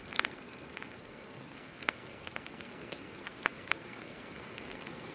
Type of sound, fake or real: fake